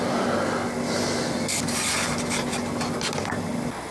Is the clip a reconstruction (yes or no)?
no